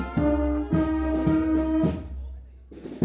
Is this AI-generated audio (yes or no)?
no